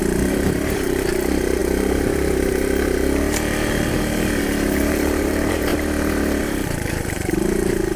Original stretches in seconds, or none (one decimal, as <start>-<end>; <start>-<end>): 5.7-6.4